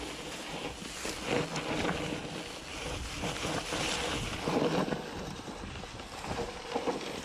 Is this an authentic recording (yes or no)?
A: yes